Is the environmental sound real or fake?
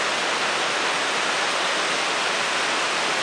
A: real